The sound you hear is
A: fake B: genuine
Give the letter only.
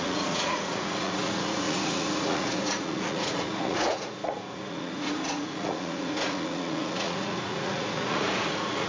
A